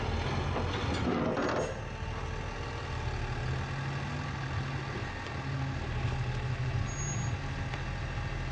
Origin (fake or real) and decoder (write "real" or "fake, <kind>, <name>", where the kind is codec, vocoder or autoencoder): real